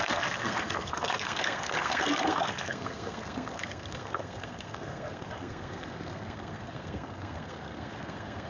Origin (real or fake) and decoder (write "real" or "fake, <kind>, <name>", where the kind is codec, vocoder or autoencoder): fake, codec, SNAC